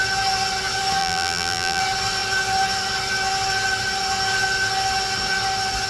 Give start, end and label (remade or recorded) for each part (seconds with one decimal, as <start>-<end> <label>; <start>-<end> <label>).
0.0-1.0 recorded; 1.0-1.8 remade; 1.8-5.9 recorded